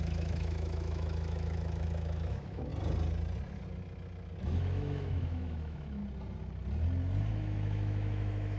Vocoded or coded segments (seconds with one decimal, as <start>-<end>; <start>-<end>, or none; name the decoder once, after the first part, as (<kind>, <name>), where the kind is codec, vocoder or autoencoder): 0.0-2.7 (autoencoder, DAC-VAE); 4.4-6.0; 7.3-8.6